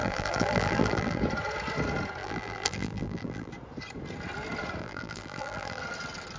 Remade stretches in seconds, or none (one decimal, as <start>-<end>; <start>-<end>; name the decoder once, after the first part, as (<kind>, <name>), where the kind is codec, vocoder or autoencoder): 0.0-1.2 (vocoder, BigVGAN v2); 2.2-3.5; 4.8-5.8